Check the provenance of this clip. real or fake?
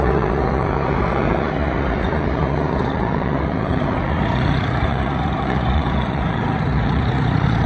fake